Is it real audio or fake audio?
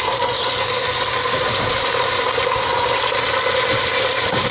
real